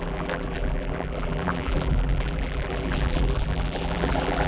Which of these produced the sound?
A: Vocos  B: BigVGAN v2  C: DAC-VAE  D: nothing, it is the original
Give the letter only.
B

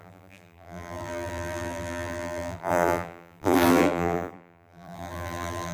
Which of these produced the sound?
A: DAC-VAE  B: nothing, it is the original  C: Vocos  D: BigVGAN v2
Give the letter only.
D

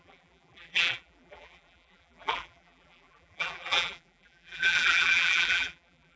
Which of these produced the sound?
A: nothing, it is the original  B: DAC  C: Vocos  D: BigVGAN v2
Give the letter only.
D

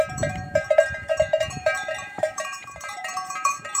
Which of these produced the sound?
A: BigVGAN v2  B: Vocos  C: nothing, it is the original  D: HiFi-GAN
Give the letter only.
A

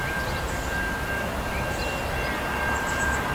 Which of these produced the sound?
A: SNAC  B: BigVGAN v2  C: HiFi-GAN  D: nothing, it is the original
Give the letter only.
B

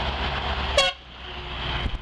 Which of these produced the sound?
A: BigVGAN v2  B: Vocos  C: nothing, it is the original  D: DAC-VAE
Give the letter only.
C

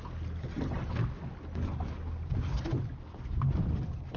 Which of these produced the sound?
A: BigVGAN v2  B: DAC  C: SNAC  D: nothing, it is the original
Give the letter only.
D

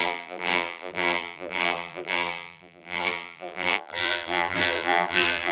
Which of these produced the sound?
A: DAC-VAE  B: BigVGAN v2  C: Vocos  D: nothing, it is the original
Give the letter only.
B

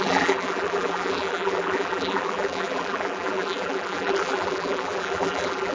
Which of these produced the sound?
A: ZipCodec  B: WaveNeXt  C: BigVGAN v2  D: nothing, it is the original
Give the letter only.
C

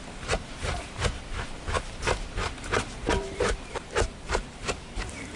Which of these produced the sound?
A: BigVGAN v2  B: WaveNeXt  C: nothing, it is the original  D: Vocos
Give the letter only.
A